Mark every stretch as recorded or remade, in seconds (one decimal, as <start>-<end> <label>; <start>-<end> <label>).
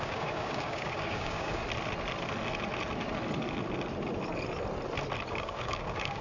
0.0-1.6 remade; 1.6-5.3 recorded; 5.3-6.2 remade